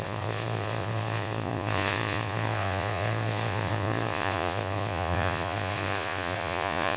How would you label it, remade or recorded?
remade